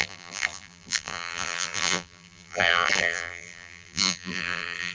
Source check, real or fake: fake